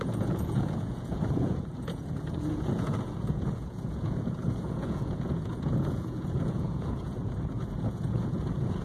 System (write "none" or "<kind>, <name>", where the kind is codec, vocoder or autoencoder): vocoder, Vocos